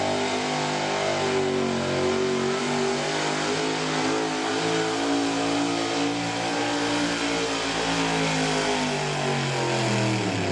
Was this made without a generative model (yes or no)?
yes